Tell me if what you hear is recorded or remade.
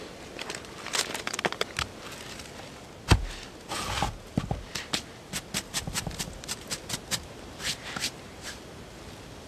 recorded